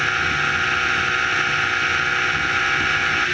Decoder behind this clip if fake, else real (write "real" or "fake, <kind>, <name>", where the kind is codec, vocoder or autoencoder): real